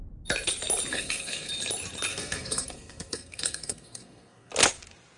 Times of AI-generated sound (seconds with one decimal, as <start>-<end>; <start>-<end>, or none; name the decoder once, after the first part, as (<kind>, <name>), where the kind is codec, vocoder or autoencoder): 0.9-1.5 (codec, SNAC); 2.1-4.5